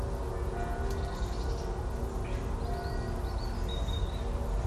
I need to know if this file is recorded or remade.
recorded